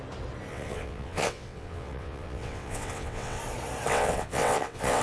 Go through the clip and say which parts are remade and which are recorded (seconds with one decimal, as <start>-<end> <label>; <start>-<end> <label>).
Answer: 0.0-0.5 recorded; 0.5-3.4 remade; 3.4-3.9 recorded; 3.9-5.0 remade